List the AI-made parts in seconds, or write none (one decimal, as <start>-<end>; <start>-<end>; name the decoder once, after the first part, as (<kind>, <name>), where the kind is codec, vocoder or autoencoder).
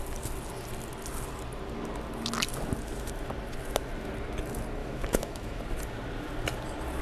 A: 4.8-5.6 (autoencoder, DAC-VAE)